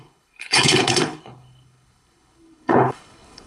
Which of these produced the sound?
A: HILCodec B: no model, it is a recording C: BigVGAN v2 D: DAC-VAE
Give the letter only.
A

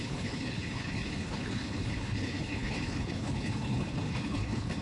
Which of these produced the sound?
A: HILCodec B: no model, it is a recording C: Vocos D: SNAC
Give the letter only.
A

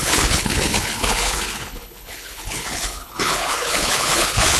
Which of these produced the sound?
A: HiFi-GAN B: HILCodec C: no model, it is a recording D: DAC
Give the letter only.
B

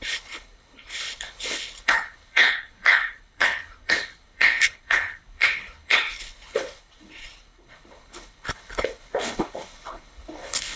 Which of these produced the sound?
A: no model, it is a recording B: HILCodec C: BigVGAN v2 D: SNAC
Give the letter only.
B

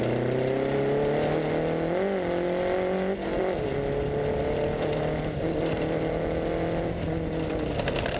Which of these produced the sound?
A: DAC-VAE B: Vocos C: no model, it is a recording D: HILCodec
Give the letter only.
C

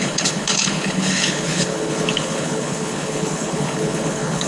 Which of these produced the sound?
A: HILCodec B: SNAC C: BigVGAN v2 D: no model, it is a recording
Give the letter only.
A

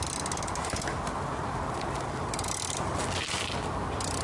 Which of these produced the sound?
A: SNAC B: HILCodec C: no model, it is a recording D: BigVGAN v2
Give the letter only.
C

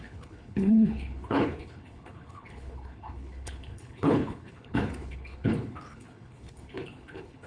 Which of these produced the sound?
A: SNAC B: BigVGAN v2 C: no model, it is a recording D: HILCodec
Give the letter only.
D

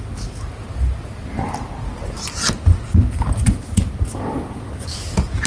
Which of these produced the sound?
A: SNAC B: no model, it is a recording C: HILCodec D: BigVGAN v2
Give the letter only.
B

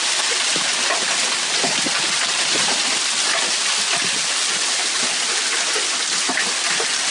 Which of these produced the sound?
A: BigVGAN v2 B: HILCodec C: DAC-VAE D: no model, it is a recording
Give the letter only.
D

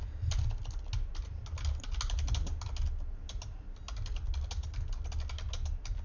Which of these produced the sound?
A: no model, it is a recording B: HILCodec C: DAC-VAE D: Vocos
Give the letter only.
A